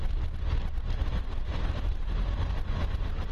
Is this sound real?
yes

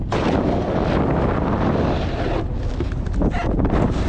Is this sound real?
yes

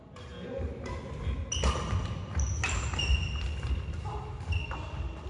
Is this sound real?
yes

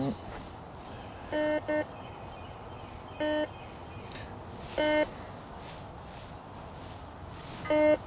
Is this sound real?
yes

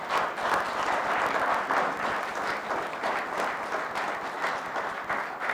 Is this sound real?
yes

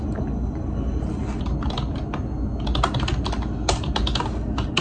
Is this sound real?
yes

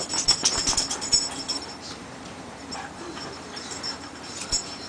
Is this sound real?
no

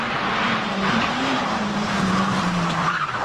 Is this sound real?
no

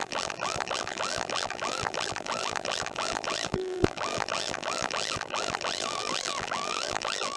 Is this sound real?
no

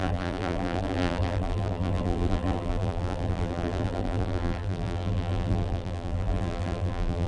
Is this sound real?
no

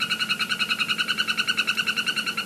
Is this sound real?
yes